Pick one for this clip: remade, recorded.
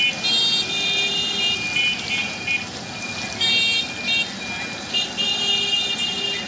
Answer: recorded